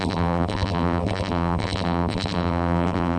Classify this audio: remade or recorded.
remade